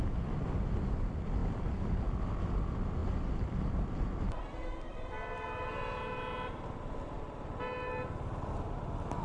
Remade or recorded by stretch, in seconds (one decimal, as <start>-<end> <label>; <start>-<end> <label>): 0.0-1.4 recorded; 1.4-2.0 remade; 2.0-3.0 recorded; 3.0-4.4 remade; 4.4-9.2 recorded